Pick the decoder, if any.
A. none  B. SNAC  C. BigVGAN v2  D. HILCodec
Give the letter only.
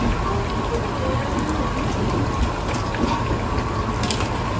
A